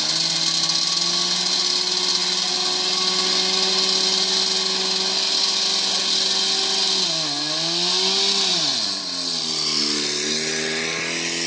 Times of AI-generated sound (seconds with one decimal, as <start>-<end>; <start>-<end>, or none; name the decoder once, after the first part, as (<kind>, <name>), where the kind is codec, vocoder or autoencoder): 8.5-9.0 (vocoder, Vocos)